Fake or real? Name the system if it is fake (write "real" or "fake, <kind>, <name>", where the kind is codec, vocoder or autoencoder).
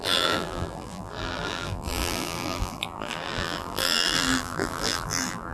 fake, vocoder, BigVGAN v2